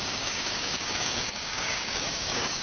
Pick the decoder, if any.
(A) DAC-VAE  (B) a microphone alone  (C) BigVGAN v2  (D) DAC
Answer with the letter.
D